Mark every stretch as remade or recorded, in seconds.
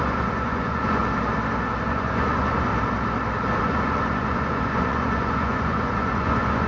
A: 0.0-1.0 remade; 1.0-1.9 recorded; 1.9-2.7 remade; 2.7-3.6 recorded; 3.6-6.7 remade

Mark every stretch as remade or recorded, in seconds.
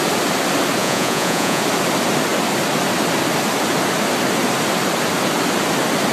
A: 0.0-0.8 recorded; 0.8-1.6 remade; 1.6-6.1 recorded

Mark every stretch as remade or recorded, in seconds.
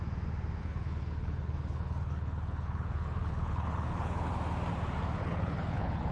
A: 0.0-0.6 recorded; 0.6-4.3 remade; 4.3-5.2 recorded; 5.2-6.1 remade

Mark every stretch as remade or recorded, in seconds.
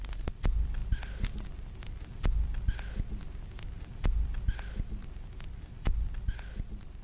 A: 0.0-5.0 recorded; 5.0-6.1 remade; 6.1-7.0 recorded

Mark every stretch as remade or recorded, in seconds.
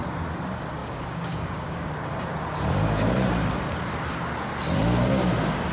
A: 0.0-0.8 recorded; 0.8-2.1 remade; 2.1-5.7 recorded